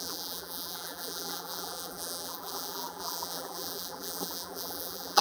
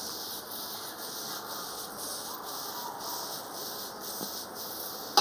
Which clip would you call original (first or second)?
second